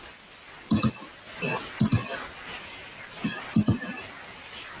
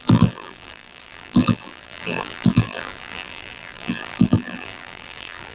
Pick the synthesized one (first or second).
second